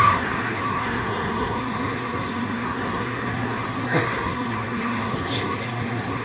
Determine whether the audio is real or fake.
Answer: fake